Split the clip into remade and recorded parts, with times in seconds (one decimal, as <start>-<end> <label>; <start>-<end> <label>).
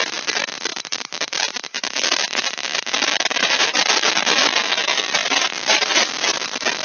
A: 0.0-0.7 recorded; 0.7-3.8 remade; 3.8-5.2 recorded; 5.2-6.1 remade; 6.1-6.8 recorded